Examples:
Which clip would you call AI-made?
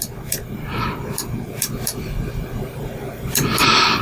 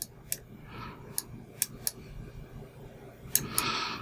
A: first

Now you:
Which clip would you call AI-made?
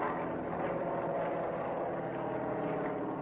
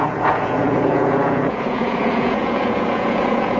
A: second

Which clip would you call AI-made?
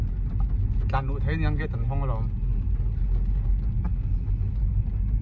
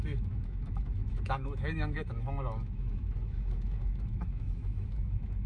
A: second